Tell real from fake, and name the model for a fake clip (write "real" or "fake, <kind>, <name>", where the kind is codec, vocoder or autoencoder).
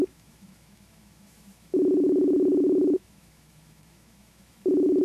fake, autoencoder, DAC-VAE